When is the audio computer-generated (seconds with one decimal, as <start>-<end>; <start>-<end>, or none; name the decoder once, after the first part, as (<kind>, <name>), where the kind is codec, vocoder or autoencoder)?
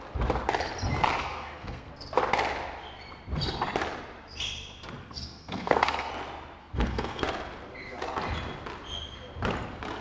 1.2-1.9 (codec, SNAC); 5.0-6.1; 6.6-7.2